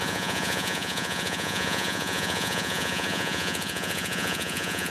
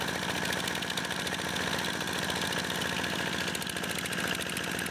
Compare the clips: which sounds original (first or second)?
second